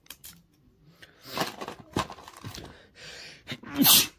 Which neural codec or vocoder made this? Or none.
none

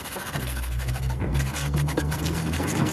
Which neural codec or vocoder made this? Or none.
codec, SNAC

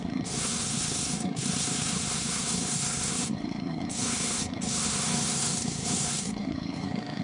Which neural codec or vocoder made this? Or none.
codec, SNAC